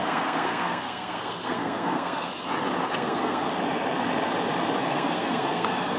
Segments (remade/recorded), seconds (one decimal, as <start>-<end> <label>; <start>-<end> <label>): 0.0-2.3 remade; 2.3-2.9 recorded; 2.9-3.5 remade; 3.5-4.8 recorded; 4.8-6.0 remade